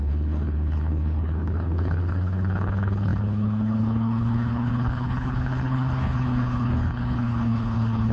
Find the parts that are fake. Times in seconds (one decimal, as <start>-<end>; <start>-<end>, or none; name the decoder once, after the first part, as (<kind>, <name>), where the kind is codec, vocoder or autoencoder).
0.0-8.1 (codec, HILCodec)